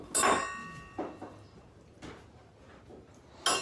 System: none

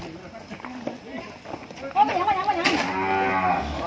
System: none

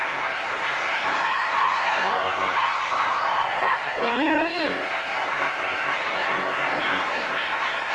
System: codec, SNAC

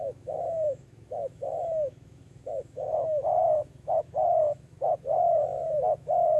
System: autoencoder, DAC-VAE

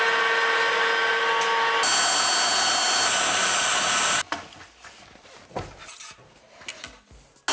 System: none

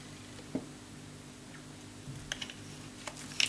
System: none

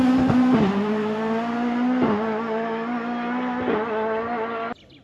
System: none